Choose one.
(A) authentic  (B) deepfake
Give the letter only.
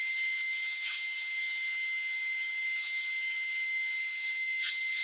B